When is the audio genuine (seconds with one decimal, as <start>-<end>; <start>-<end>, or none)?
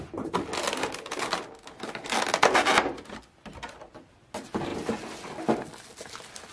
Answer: 0.0-6.5